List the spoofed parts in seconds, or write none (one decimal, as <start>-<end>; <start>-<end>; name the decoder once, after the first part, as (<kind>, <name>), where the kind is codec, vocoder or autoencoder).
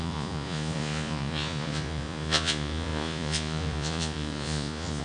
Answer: 0.0-5.0 (vocoder, Vocos)